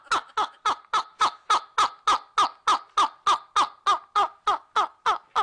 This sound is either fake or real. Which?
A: real